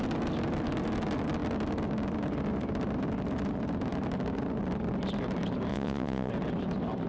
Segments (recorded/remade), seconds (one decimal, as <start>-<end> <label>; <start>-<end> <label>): 0.0-5.7 recorded; 5.7-6.3 remade; 6.3-7.1 recorded